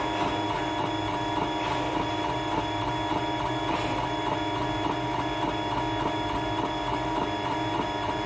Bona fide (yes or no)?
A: yes